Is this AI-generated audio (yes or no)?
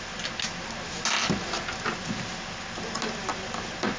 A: no